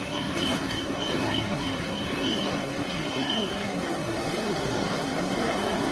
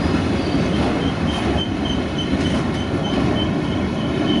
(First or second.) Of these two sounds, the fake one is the first